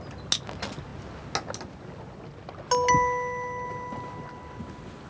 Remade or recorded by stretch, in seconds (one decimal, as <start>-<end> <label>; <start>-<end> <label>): 0.0-5.1 recorded